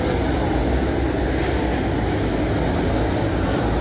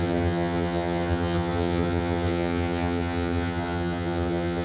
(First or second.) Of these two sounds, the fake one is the second